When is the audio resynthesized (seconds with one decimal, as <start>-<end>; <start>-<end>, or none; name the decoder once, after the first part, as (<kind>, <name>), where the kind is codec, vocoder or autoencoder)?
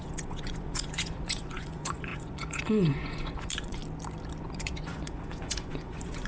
0.0-3.8 (vocoder, Vocos); 4.4-6.3